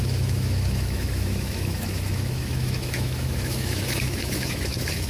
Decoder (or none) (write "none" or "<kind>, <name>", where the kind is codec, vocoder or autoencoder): autoencoder, DAC-VAE